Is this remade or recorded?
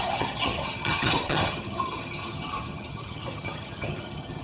remade